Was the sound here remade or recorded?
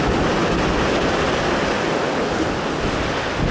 recorded